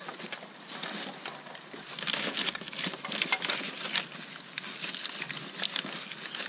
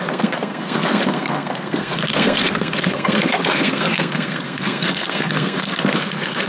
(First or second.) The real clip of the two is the first